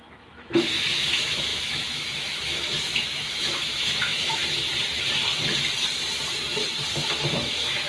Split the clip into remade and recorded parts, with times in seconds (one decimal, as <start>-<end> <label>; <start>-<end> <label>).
0.0-4.4 remade; 4.4-7.3 recorded; 7.3-7.9 remade

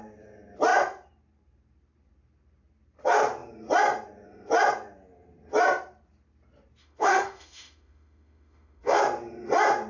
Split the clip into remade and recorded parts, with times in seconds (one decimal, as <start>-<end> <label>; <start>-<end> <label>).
0.0-6.8 recorded; 6.8-9.0 remade; 9.0-9.9 recorded

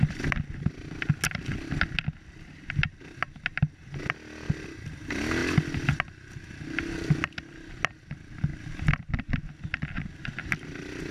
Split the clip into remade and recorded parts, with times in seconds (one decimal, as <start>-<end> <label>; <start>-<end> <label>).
0.0-11.1 recorded

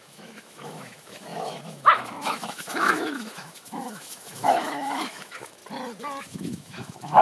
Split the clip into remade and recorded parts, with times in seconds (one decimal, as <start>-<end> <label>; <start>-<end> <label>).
0.0-5.6 remade; 5.6-6.2 recorded; 6.2-7.2 remade

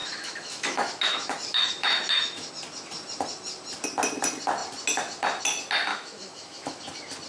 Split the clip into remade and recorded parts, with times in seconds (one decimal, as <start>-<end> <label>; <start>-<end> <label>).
0.0-2.5 remade; 2.5-5.9 recorded; 5.9-6.8 remade; 6.8-7.3 recorded

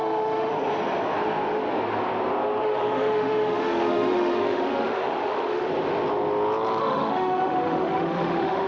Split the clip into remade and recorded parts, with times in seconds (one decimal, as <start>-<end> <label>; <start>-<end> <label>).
0.0-0.5 remade; 0.5-2.6 recorded; 2.6-5.7 remade; 5.7-6.8 recorded; 6.8-8.7 remade

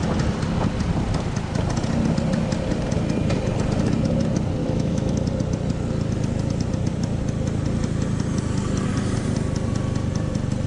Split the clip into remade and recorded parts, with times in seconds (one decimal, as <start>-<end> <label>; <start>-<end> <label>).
0.0-4.6 recorded; 4.6-5.1 remade; 5.1-10.7 recorded